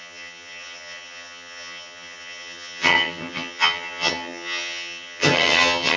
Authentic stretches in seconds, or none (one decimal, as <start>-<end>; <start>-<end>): none

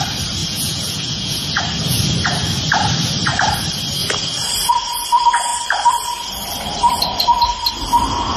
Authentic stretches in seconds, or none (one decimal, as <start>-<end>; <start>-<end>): 0.0-0.4; 1.6-8.4

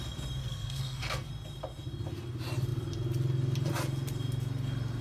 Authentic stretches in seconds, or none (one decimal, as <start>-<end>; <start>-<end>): 0.0-0.4; 1.3-5.0

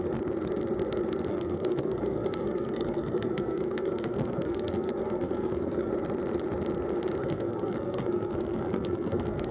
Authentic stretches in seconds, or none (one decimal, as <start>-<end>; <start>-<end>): 0.0-1.3; 5.9-7.2